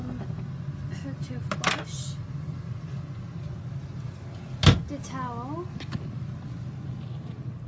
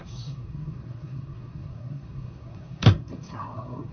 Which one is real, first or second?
first